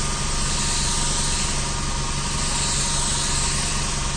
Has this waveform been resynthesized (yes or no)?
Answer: no